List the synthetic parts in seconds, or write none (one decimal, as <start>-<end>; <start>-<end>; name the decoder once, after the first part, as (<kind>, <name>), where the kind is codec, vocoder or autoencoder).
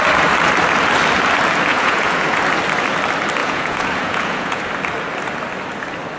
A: 1.7-2.4 (vocoder, Vocos); 3.4-4.6